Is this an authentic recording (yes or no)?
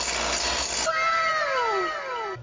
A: yes